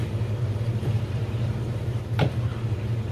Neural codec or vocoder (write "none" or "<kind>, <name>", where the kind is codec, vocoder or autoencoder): vocoder, BigVGAN v2